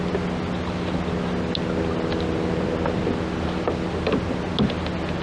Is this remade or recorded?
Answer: recorded